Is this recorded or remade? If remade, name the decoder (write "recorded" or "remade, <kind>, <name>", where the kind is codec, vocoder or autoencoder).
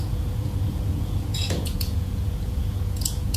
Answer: remade, vocoder, Vocos